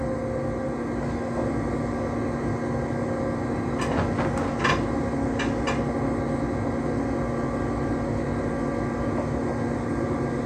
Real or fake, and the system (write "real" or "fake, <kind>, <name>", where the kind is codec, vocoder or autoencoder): real